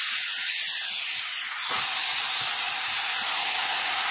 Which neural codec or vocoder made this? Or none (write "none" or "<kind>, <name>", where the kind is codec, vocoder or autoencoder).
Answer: none